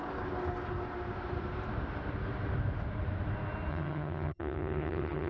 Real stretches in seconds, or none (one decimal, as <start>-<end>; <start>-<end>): 0.0-3.7